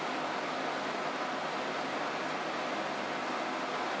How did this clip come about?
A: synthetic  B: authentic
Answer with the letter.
B